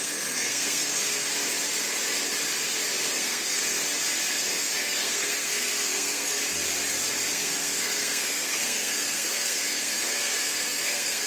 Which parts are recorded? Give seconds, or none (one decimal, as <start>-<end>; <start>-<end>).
1.3-3.1; 3.6-4.3; 6.4-7.3